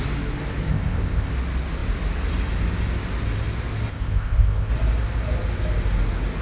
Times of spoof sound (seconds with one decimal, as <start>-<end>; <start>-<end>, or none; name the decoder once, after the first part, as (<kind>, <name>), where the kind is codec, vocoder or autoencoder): 0.7-1.3 (codec, ZipCodec); 3.9-4.7